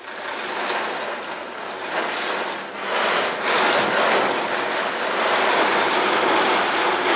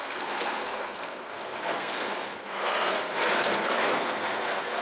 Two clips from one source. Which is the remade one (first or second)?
second